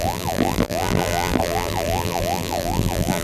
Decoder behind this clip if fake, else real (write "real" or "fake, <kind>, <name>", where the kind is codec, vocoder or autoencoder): fake, vocoder, BigVGAN v2